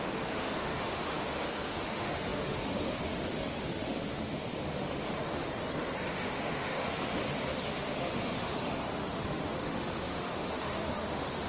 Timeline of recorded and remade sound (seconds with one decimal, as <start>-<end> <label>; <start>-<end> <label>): 0.0-5.5 remade; 5.5-6.1 recorded; 6.1-11.5 remade